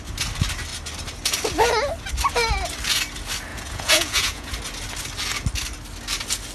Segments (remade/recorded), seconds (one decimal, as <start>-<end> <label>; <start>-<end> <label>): 0.0-3.5 recorded; 3.5-4.6 remade; 4.6-6.5 recorded